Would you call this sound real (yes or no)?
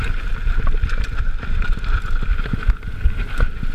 yes